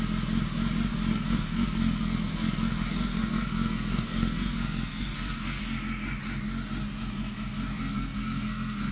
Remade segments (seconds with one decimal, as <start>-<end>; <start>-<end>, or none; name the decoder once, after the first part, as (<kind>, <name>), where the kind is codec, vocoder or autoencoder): 1.1-5.6 (codec, SNAC); 7.7-8.9